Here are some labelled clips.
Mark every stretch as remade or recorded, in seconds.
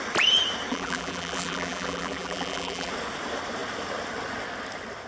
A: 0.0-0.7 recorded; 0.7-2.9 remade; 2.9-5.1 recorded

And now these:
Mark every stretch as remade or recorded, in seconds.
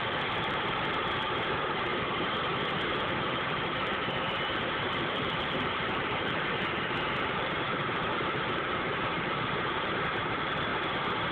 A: 0.0-1.9 remade; 1.9-2.9 recorded; 2.9-10.7 remade; 10.7-11.3 recorded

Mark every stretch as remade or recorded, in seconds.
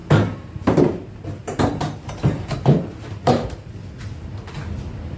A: 0.0-0.8 remade; 0.8-1.4 recorded; 1.4-3.7 remade; 3.7-5.2 recorded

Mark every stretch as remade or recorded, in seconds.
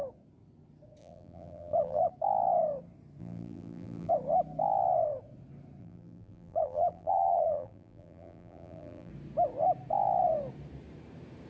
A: 0.0-1.0 recorded; 1.0-2.1 remade; 2.1-3.2 recorded; 3.2-4.1 remade; 4.1-5.8 recorded; 5.8-9.1 remade; 9.1-11.5 recorded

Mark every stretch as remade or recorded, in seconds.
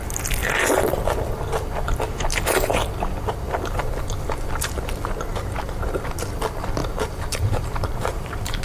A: 0.0-6.8 recorded; 6.8-8.6 remade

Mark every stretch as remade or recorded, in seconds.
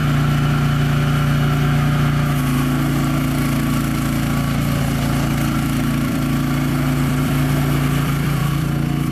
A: 0.0-4.8 recorded; 4.8-9.1 remade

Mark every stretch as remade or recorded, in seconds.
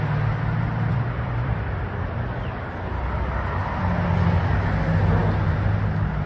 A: 0.0-0.9 recorded; 0.9-1.8 remade; 1.8-6.3 recorded